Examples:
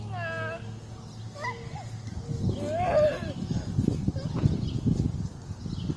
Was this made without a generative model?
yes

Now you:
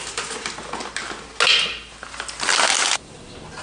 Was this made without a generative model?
yes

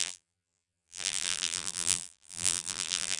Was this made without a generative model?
no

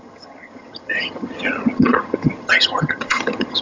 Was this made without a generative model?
no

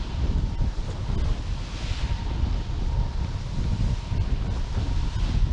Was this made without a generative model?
yes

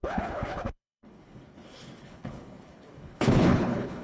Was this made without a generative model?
no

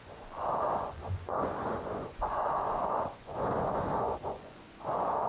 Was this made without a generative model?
no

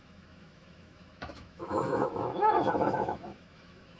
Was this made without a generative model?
no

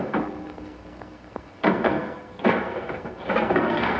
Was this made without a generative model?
no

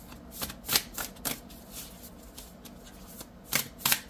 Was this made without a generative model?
yes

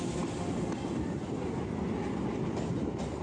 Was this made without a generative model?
yes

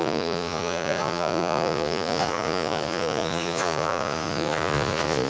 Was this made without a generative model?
no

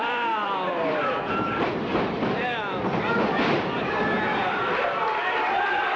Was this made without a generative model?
no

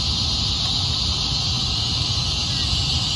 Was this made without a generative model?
yes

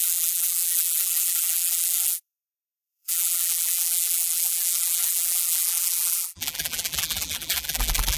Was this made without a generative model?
no